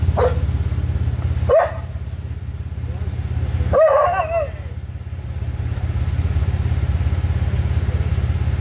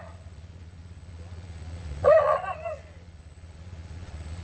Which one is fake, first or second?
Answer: second